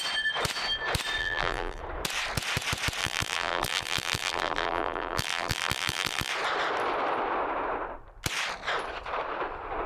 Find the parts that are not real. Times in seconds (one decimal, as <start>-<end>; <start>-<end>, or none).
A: 1.2-1.8; 3.0-6.3